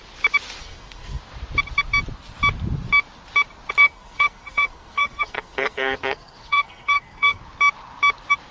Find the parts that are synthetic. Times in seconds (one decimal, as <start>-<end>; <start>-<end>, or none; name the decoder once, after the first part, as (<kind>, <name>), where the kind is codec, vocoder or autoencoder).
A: 0.6-1.2 (codec, SNAC); 3.8-7.4